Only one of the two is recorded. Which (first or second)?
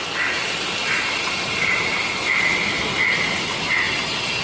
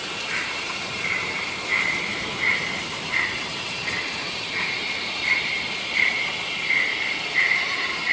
first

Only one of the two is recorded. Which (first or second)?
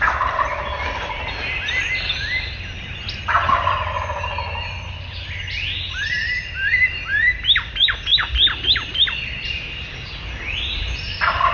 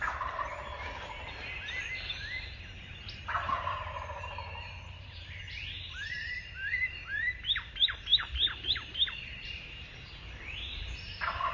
first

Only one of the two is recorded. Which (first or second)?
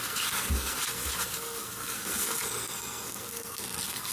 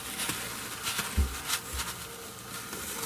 second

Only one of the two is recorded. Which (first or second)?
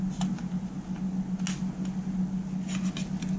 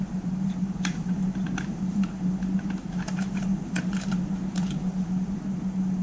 first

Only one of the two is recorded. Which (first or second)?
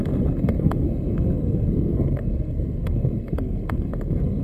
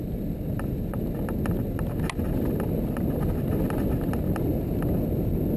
second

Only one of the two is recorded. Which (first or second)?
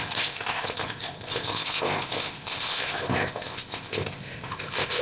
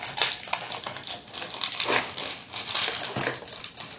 second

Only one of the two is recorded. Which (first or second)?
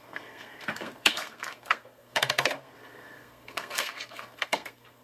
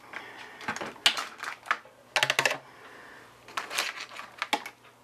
second